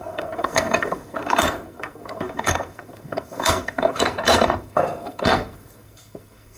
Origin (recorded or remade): remade